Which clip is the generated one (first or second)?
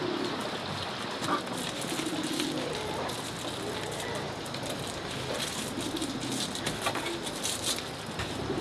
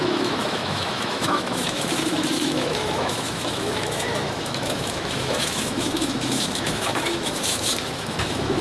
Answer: second